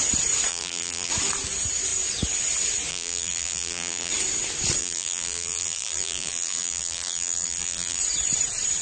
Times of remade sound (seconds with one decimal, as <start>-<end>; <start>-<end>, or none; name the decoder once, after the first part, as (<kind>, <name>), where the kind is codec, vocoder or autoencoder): 0.5-1.1 (vocoder, BigVGAN v2); 2.9-4.1; 4.8-8.0